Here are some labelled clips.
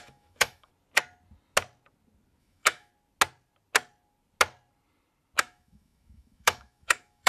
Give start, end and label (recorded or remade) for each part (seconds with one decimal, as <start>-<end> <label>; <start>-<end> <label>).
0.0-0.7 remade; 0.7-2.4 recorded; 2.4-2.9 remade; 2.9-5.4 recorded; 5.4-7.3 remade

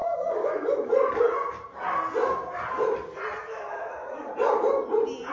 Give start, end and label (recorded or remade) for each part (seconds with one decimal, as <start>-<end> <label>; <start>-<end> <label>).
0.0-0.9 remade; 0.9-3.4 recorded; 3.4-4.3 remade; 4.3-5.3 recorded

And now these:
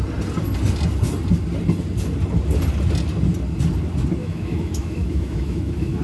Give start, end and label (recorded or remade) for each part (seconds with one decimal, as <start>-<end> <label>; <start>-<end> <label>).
0.0-4.2 recorded; 4.2-6.0 remade

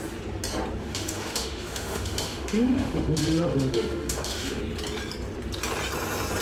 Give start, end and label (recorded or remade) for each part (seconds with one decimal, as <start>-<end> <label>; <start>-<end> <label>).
0.0-0.8 recorded; 0.8-4.6 remade; 4.6-6.4 recorded

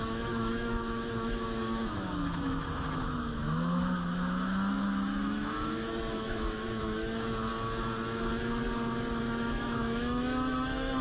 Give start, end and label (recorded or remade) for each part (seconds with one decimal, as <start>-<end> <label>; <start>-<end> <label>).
0.0-7.5 remade; 7.5-9.2 recorded; 9.2-11.0 remade

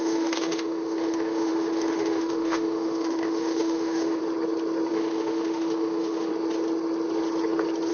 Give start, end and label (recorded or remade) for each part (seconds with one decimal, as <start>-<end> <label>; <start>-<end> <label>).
0.0-4.2 remade; 4.2-4.9 recorded; 4.9-6.3 remade; 6.3-7.9 recorded